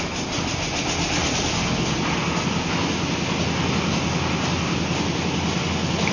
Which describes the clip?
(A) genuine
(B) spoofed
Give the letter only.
A